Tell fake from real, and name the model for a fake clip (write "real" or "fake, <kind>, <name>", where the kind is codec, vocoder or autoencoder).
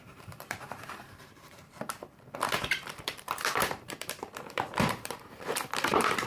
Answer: fake, vocoder, BigVGAN v2